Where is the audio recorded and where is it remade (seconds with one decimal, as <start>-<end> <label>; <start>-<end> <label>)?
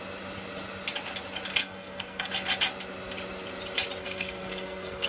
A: 0.0-1.6 recorded; 1.6-2.3 remade; 2.3-4.0 recorded; 4.0-5.1 remade